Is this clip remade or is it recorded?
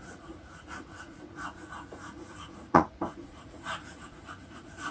remade